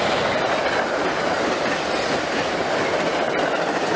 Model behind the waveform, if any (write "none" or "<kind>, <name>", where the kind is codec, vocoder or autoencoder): none